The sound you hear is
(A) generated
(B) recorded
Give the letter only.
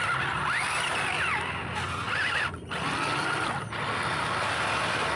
B